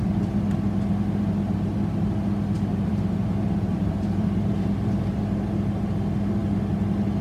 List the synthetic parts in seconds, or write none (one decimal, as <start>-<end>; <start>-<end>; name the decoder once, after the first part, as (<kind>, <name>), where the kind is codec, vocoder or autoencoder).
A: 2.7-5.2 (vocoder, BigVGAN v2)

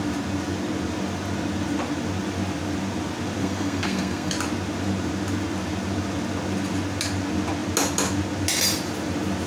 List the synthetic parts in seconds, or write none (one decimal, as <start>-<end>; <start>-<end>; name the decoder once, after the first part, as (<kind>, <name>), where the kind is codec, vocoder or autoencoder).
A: 3.4-4.3 (codec, SNAC)

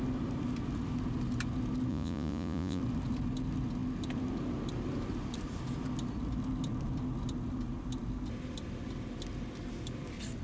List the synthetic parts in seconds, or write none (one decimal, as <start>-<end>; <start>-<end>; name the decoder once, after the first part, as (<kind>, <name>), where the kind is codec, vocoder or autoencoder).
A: 1.9-2.8 (vocoder, Vocos)

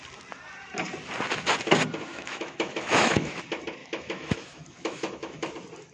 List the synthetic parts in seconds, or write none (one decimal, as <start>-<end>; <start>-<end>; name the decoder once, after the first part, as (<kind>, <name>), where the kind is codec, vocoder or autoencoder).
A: 2.1-3.4 (autoencoder, DAC-VAE); 3.8-5.5

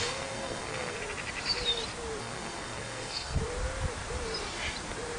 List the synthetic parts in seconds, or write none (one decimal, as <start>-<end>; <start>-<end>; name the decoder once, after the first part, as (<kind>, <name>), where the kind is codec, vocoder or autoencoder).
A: 0.0-1.0 (codec, SNAC); 2.2-3.4

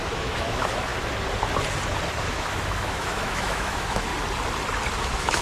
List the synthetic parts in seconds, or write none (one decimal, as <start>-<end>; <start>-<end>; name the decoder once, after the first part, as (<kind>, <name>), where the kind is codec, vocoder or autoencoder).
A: 0.0-0.9 (autoencoder, DAC-VAE); 2.2-4.1; 5.0-5.4